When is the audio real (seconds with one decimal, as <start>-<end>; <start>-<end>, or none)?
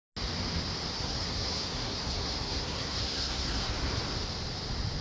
0.0-0.9; 3.7-5.0